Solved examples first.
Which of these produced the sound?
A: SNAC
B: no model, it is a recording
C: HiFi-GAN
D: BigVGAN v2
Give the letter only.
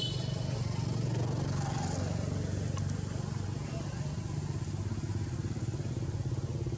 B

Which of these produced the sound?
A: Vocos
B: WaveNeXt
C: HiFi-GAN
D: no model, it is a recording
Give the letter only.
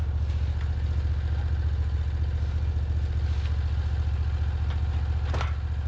D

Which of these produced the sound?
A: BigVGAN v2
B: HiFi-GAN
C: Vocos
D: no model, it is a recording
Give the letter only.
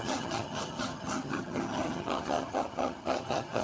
B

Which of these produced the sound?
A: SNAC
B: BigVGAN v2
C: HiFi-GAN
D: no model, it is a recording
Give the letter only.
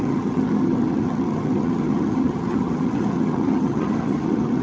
C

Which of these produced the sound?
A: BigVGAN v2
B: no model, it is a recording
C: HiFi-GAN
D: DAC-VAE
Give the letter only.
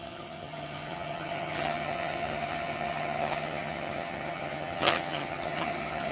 C